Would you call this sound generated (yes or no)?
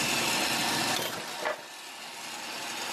no